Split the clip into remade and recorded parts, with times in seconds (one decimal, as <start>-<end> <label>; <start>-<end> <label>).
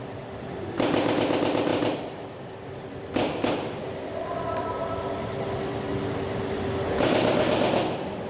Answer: 0.0-1.7 recorded; 1.7-5.8 remade; 5.8-8.3 recorded